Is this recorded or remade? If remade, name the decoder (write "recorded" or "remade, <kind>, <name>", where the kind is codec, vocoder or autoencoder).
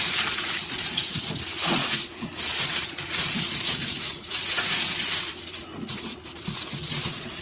remade, vocoder, Vocos